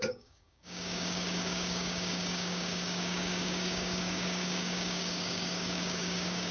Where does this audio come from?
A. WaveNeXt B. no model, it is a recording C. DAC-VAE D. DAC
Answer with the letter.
D